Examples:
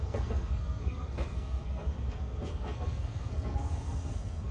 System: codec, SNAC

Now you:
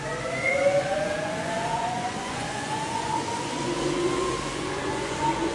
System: vocoder, Vocos